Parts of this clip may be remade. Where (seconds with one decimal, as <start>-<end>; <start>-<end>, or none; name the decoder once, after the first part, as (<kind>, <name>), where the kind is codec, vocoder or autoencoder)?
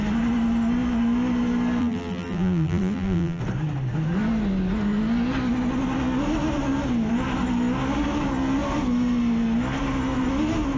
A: 1.8-3.4 (vocoder, BigVGAN v2)